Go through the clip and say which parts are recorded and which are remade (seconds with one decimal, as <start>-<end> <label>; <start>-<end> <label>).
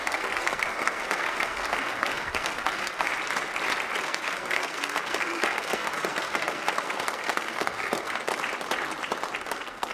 0.0-3.1 remade; 3.1-4.0 recorded; 4.0-8.3 remade; 8.3-9.4 recorded; 9.4-9.9 remade